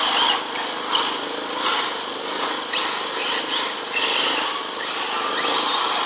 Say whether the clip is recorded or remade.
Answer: recorded